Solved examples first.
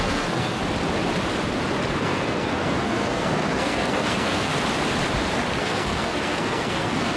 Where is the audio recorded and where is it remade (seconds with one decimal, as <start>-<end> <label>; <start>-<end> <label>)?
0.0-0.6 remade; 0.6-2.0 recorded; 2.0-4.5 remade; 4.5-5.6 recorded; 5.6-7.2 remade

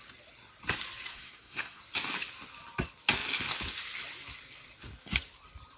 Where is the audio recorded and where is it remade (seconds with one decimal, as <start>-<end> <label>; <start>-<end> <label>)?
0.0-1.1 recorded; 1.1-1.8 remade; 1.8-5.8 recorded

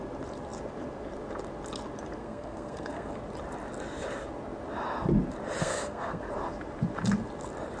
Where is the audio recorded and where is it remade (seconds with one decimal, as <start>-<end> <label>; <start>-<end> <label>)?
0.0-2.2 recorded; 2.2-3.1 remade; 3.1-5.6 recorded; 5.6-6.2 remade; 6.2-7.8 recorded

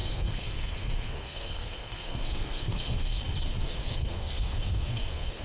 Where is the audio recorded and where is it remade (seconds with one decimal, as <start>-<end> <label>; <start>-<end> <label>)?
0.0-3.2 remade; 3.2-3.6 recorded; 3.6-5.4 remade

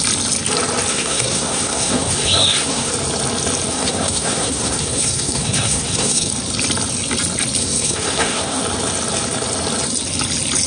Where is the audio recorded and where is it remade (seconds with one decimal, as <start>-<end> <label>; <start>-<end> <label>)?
0.0-0.9 recorded; 0.9-2.9 remade; 2.9-3.7 recorded; 3.7-6.3 remade; 6.3-7.6 recorded; 7.6-8.6 remade; 8.6-10.7 recorded